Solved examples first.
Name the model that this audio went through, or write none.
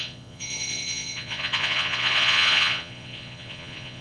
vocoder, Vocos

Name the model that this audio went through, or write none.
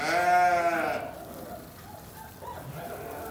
none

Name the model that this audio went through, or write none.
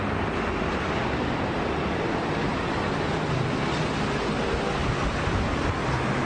none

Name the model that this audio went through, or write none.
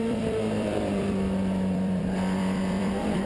vocoder, BigVGAN v2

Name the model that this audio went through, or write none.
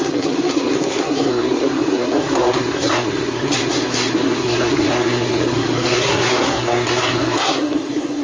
codec, SNAC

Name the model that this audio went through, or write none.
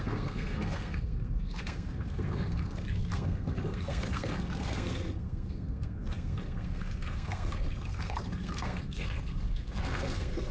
codec, SNAC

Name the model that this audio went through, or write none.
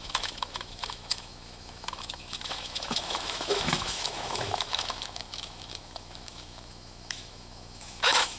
autoencoder, DAC-VAE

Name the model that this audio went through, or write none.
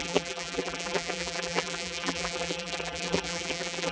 vocoder, BigVGAN v2